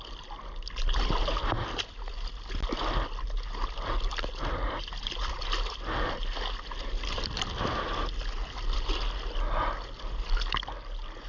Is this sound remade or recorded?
recorded